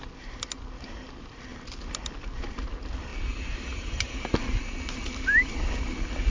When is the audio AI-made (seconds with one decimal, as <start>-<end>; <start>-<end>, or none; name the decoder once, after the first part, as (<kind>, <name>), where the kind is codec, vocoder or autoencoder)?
none